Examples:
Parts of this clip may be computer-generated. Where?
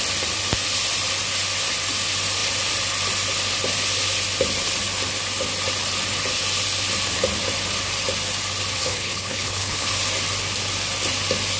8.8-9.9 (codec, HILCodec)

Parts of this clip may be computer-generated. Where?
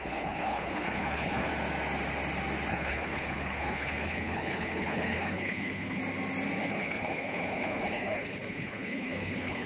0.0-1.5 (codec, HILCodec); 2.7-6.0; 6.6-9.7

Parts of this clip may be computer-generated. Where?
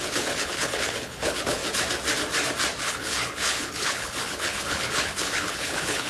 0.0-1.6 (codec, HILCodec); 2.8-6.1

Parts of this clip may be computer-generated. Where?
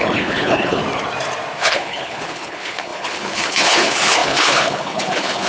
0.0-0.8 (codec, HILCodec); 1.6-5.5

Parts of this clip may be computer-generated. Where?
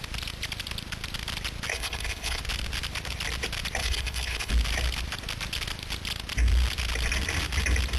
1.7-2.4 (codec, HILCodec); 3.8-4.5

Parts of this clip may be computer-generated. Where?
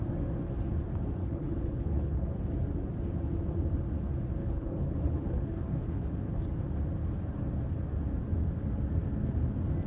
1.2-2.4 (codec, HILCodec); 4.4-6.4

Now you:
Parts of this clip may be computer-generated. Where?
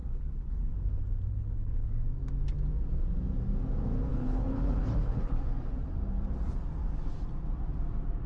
0.0-0.7 (codec, HILCodec); 1.3-1.9; 4.1-5.5